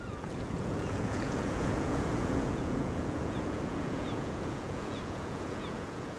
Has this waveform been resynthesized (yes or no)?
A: yes